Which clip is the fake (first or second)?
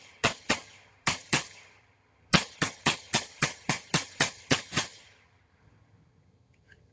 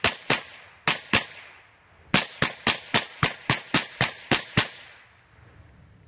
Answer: first